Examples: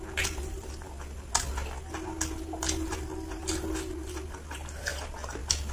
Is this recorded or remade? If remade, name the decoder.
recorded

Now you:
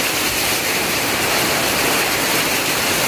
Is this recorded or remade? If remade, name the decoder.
remade, vocoder, BigVGAN v2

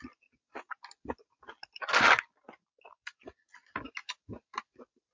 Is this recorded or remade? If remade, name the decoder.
recorded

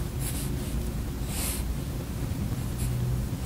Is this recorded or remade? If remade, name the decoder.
recorded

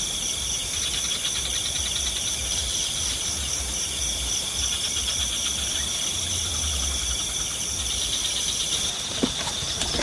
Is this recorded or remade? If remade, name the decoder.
remade, vocoder, BigVGAN v2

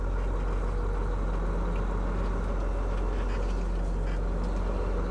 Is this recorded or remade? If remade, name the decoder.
recorded